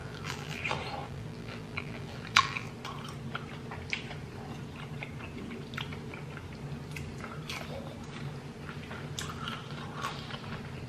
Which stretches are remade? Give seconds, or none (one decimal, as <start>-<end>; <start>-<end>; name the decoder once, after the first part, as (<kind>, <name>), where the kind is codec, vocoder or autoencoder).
0.0-0.6 (vocoder, BigVGAN v2); 1.0-2.7